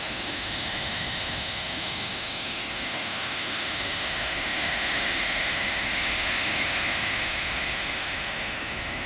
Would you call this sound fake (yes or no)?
yes